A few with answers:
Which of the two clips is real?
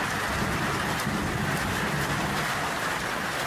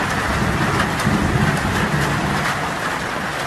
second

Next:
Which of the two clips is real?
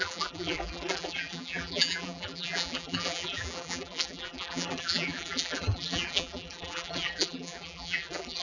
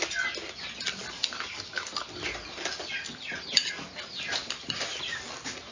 second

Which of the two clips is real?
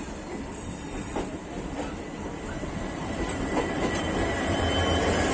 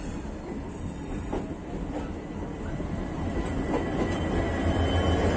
second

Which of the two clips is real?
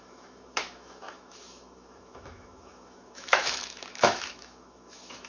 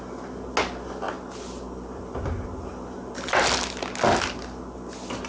second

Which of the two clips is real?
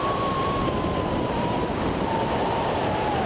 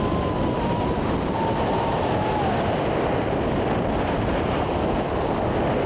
second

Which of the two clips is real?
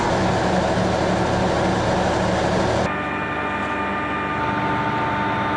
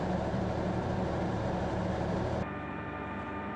first